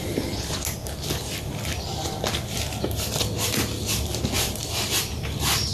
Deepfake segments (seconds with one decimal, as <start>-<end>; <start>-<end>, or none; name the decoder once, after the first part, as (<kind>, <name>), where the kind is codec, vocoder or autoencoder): none